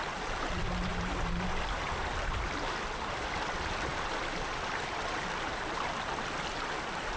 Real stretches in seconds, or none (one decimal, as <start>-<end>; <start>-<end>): 0.0-7.2